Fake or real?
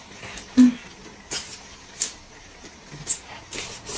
real